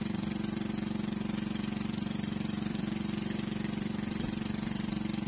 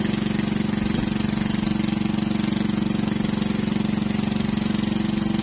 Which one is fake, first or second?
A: first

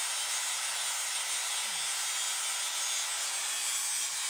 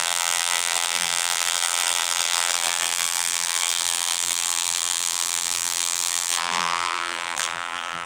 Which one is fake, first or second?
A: second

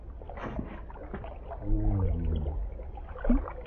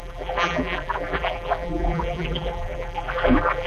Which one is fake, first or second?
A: second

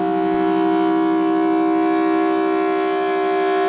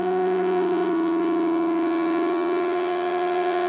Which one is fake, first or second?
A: second